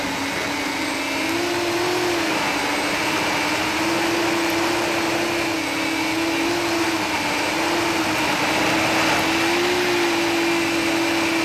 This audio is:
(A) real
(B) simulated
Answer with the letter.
A